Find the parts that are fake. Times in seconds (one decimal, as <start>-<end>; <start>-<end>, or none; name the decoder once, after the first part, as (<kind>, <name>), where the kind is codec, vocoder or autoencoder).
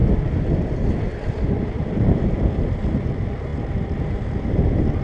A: 1.1-5.0 (vocoder, BigVGAN v2)